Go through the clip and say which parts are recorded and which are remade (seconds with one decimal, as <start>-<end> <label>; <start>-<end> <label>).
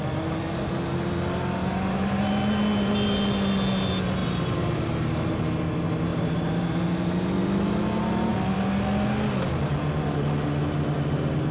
0.0-1.6 recorded; 1.6-2.2 remade; 2.2-4.2 recorded; 4.2-5.4 remade; 5.4-6.1 recorded; 6.1-6.7 remade; 6.7-11.5 recorded